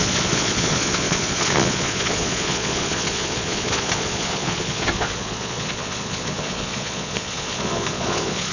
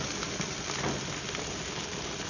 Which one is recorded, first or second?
second